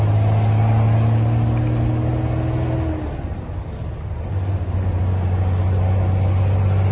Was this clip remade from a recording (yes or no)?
no